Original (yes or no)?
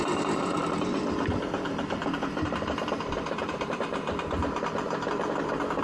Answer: no